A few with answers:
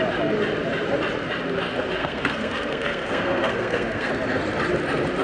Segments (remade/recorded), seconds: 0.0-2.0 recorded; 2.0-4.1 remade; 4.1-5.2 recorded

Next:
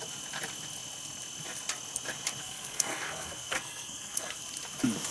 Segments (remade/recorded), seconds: 0.0-2.4 recorded; 2.4-4.4 remade; 4.4-5.1 recorded

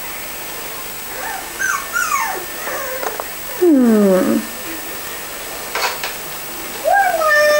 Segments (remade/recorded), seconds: 0.0-7.6 recorded